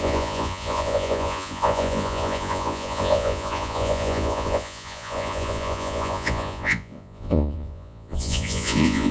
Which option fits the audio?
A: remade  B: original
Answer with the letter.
A